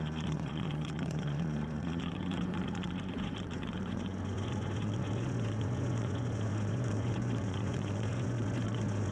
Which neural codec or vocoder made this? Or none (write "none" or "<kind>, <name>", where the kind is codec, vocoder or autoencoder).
vocoder, Vocos